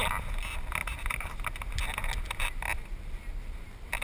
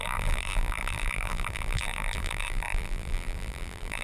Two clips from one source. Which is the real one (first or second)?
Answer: first